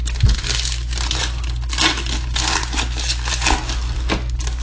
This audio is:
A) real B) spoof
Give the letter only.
A